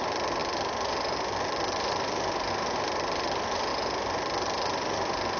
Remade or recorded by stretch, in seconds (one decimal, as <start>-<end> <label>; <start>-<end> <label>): 0.0-5.4 recorded